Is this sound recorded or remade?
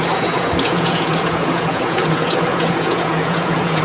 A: remade